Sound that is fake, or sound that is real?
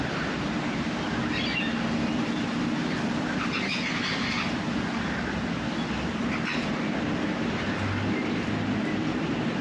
real